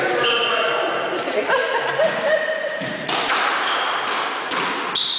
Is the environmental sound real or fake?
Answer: real